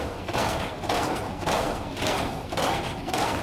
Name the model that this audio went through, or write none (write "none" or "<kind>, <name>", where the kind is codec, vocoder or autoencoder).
codec, SNAC